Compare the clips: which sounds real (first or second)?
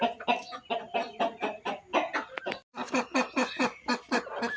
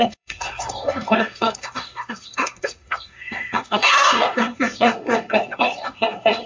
first